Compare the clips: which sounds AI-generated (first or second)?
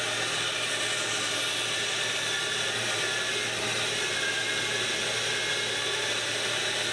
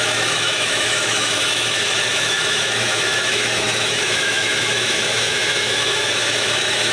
second